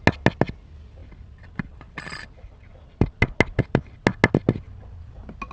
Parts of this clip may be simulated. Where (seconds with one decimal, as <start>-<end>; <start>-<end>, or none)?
none